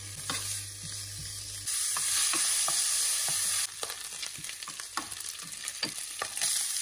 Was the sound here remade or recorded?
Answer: recorded